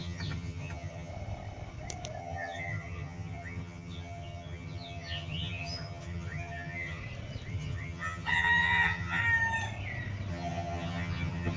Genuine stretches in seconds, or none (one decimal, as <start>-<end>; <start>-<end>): 1.1-2.2; 7.0-7.5; 9.2-10.3